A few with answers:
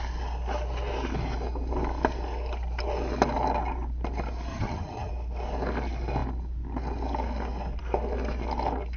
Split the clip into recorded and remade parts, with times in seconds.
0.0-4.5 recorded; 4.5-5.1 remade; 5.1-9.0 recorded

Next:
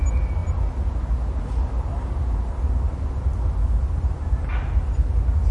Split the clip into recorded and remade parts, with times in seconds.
0.0-5.5 recorded

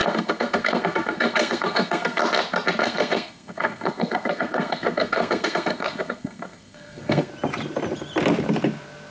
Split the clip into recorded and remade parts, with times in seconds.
0.0-2.2 remade; 2.2-2.8 recorded; 2.8-7.3 remade; 7.3-9.1 recorded

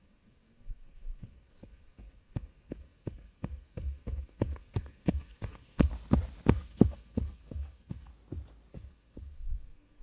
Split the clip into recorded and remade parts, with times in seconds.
0.0-5.9 remade; 5.9-6.5 recorded; 6.5-8.1 remade; 8.1-8.7 recorded; 8.7-10.0 remade

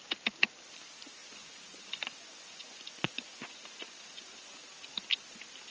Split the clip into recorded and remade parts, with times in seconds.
0.0-1.2 recorded; 1.2-4.6 remade; 4.6-5.7 recorded